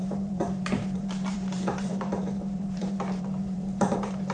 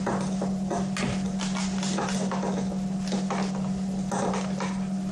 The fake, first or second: first